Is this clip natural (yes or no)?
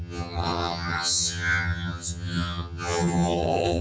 no